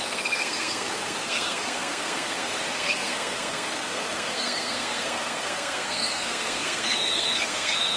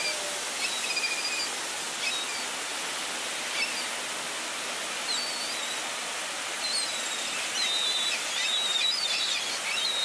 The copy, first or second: first